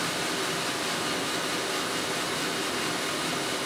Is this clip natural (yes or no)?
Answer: yes